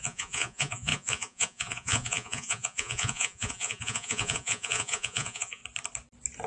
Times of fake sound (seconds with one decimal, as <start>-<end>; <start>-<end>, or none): 0.0-5.6